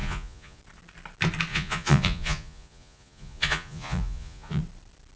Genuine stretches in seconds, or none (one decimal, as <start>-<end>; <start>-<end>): 0.6-1.5; 4.6-5.2